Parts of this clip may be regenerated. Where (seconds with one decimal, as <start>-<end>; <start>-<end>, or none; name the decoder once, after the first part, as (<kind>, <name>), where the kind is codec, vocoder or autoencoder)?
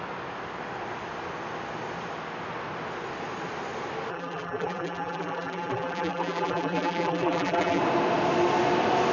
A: 4.1-7.8 (vocoder, BigVGAN v2)